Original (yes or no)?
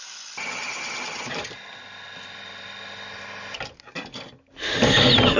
yes